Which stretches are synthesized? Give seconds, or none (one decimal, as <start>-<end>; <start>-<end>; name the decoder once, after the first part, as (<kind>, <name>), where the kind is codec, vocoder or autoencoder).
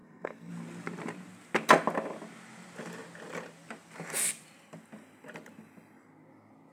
0.0-0.5 (codec, SNAC)